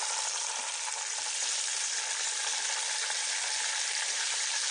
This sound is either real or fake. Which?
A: real